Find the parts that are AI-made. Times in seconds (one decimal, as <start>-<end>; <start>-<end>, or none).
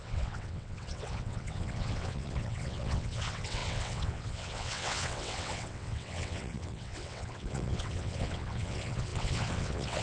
0.0-10.0